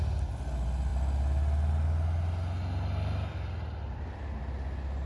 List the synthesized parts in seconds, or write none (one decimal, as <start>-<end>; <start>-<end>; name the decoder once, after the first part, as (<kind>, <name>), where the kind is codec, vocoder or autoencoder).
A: none